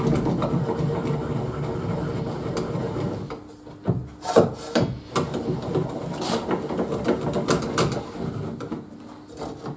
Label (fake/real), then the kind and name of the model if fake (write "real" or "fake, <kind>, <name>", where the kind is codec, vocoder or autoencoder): real